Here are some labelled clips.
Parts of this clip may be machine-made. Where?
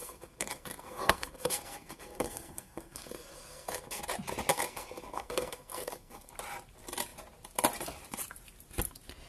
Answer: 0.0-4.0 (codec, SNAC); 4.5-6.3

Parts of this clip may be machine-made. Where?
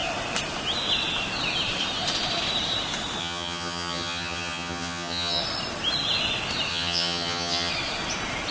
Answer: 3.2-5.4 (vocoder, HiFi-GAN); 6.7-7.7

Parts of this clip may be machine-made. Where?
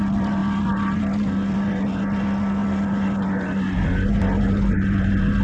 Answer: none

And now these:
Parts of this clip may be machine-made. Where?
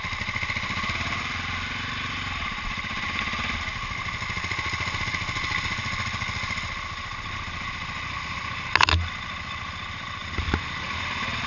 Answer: none